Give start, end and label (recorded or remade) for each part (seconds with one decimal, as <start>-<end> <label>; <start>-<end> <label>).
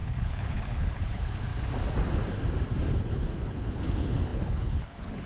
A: 0.0-1.5 remade; 1.5-3.0 recorded; 3.0-5.3 remade